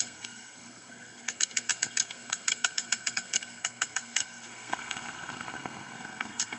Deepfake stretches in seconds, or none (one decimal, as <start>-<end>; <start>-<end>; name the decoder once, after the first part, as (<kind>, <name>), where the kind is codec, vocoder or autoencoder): 0.0-6.6 (codec, SNAC)